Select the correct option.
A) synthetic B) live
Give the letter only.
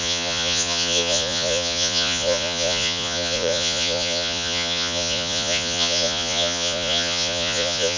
A